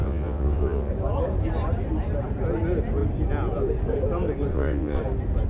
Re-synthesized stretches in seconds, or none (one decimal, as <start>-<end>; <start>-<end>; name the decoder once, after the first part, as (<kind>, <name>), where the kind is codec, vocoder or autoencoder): 0.0-0.9 (vocoder, WaveNeXt); 4.5-5.0

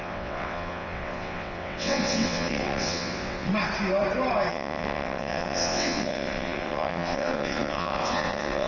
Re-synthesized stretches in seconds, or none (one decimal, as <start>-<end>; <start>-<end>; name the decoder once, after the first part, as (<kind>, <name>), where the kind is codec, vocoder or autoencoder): 0.0-3.5 (vocoder, WaveNeXt); 4.5-8.7

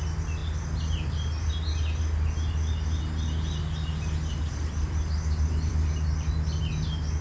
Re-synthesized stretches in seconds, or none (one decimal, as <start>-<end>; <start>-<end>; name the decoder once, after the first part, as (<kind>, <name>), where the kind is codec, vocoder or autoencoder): none

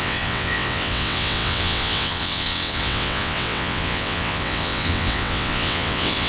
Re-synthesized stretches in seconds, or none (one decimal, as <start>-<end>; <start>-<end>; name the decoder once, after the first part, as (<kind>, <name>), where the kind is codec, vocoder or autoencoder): 0.0-6.3 (vocoder, WaveNeXt)

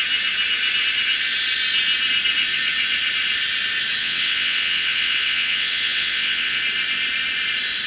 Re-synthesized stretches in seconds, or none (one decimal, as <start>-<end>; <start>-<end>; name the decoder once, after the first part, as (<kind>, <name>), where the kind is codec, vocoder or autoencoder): 4.0-6.6 (vocoder, WaveNeXt)

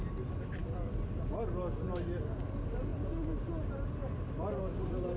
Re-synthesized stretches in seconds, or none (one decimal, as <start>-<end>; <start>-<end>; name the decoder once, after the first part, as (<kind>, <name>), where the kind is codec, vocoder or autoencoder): none

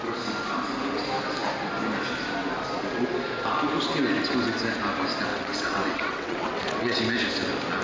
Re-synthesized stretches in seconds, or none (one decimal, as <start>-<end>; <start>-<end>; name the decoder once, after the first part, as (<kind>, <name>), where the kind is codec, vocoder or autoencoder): 5.3-7.0 (vocoder, WaveNeXt)

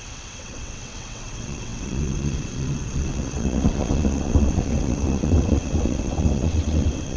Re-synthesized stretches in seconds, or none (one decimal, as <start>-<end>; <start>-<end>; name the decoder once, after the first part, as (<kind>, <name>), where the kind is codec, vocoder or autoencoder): 0.0-7.2 (vocoder, WaveNeXt)